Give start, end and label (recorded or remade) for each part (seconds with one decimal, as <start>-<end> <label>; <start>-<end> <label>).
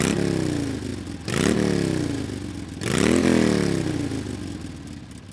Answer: 0.0-5.3 recorded